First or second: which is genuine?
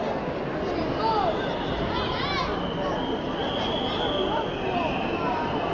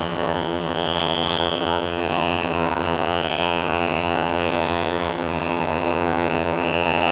first